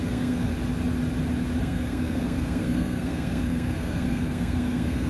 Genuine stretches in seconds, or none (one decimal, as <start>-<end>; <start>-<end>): 0.5-1.6